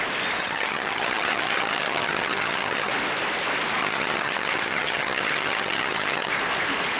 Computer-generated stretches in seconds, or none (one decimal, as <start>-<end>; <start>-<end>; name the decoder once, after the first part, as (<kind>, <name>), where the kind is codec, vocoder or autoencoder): 0.4-2.9 (vocoder, HiFi-GAN); 3.8-6.3